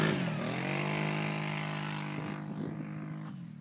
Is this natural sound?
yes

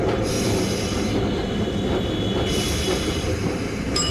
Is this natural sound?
yes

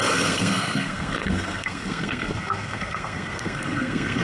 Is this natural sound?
no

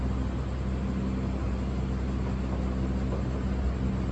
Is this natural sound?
yes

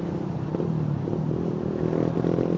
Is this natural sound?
yes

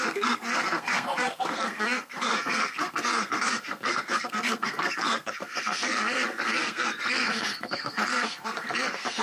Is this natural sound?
no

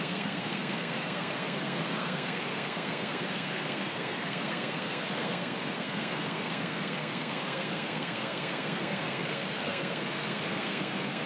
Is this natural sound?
no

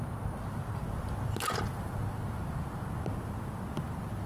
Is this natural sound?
yes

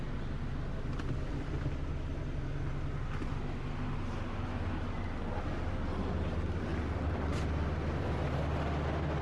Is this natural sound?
yes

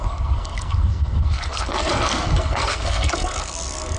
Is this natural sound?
no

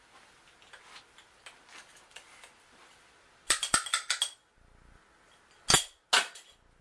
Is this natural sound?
yes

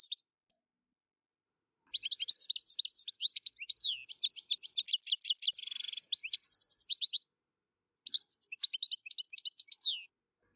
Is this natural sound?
yes